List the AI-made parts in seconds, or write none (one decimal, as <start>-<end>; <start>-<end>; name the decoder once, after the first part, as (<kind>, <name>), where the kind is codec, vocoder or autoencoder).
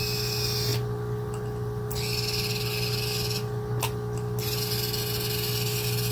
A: none